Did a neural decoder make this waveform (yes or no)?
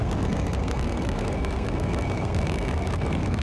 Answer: yes